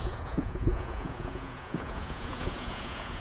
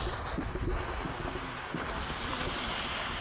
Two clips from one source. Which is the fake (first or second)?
first